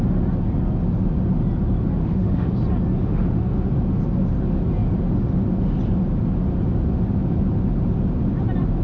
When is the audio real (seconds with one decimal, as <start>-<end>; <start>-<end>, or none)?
0.0-2.0; 2.5-3.0; 3.7-8.8